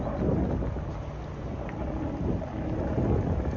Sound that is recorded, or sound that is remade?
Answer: recorded